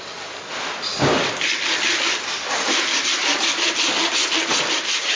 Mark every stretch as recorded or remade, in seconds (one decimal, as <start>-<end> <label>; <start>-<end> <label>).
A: 0.0-3.3 remade; 3.3-4.3 recorded; 4.3-5.2 remade